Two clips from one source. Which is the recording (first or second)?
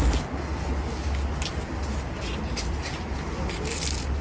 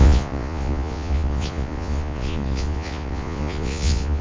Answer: first